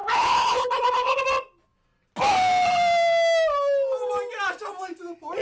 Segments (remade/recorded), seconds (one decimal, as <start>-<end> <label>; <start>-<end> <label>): 0.0-1.2 remade; 1.2-5.4 recorded